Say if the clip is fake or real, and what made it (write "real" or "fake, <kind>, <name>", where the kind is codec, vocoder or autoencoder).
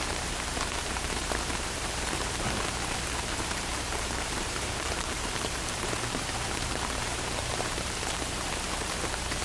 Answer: fake, vocoder, BigVGAN v2